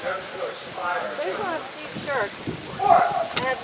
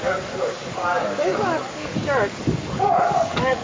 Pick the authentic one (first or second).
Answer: first